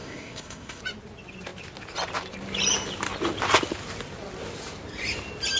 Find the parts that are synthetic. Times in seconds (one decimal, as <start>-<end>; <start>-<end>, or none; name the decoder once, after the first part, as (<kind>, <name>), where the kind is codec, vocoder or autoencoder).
0.0-0.8 (codec, ZipCodec)